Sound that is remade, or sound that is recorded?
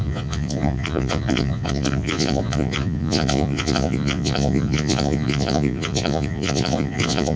remade